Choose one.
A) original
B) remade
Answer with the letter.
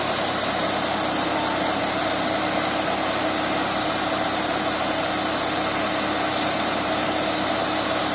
A